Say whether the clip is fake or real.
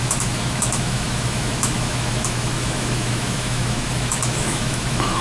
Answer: fake